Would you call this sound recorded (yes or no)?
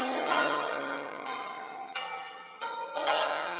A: no